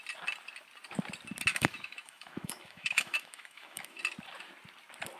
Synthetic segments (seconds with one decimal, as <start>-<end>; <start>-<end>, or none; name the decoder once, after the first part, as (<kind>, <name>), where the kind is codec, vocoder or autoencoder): 1.5-4.0 (autoencoder, DAC-VAE)